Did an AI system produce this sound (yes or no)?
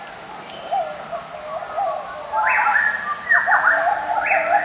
no